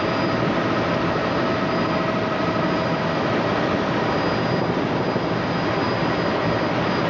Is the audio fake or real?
real